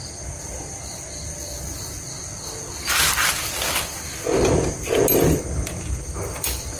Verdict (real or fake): real